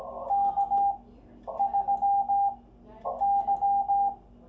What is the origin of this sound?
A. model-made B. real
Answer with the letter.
B